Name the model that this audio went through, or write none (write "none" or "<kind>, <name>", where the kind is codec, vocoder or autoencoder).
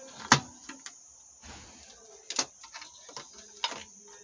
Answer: none